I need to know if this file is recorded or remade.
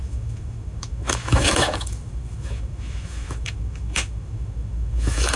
remade